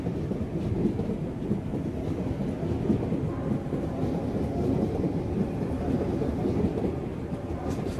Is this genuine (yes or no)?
yes